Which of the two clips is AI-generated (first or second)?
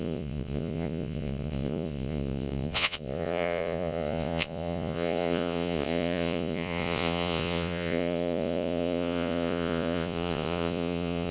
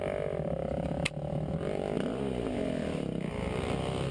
first